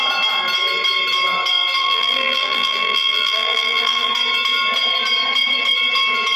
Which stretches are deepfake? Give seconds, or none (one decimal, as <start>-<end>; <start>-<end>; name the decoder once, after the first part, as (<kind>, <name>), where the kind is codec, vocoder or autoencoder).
1.8-4.1 (vocoder, BigVGAN v2)